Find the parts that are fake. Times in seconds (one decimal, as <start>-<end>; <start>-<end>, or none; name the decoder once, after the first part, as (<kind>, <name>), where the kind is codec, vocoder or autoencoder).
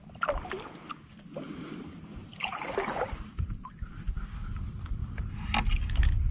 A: 2.2-3.7 (vocoder, BigVGAN v2)